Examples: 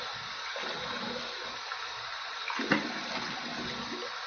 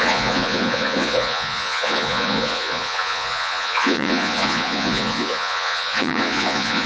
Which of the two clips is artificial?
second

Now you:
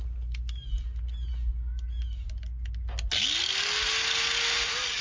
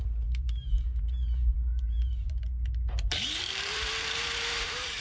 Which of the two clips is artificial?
second